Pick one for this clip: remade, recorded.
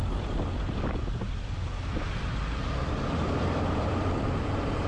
remade